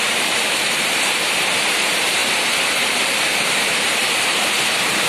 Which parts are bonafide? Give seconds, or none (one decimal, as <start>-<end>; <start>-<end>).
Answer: 2.2-3.4